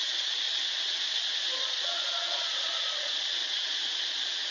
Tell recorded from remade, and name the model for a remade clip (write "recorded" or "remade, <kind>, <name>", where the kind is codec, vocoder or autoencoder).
remade, vocoder, Vocos